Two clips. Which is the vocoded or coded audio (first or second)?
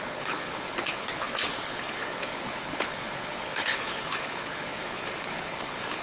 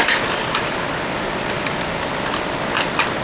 first